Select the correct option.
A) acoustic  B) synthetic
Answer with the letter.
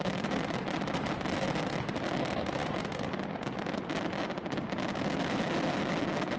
A